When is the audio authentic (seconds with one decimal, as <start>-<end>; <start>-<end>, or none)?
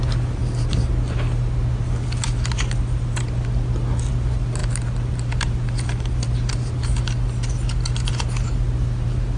0.0-9.4